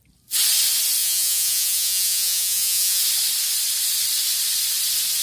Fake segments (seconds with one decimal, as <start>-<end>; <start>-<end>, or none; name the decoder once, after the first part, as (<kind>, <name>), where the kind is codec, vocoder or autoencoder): 1.0-3.0 (vocoder, Vocos)